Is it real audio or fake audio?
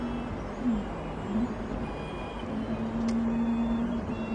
real